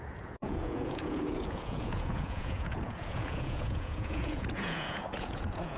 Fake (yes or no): yes